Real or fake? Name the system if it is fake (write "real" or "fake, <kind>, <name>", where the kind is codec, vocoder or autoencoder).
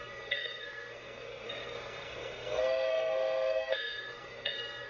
fake, codec, SNAC